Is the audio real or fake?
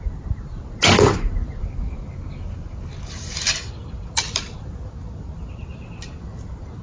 real